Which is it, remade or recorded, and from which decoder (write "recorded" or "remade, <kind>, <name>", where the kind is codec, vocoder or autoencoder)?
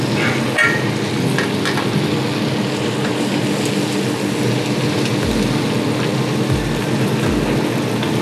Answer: recorded